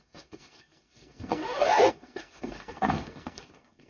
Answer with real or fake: fake